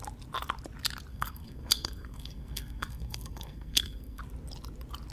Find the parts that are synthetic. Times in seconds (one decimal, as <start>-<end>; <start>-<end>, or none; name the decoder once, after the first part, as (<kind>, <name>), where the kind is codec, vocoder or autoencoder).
1.1-4.2 (codec, SNAC)